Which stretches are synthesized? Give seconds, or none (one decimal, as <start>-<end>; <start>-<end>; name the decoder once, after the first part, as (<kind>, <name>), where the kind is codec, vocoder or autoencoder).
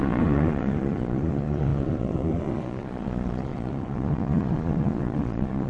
0.0-5.7 (vocoder, Vocos)